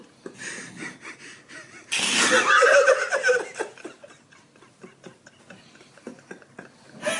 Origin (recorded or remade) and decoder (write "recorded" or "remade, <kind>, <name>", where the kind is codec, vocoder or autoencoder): recorded